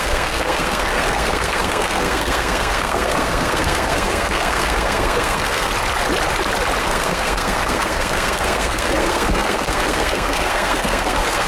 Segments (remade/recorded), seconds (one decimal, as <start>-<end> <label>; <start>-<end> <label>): 0.0-5.7 remade; 5.7-6.8 recorded; 6.8-11.5 remade